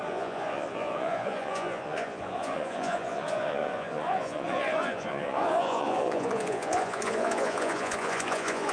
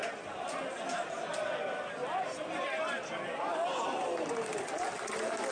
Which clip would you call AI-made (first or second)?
first